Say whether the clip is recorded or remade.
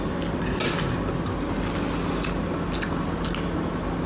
recorded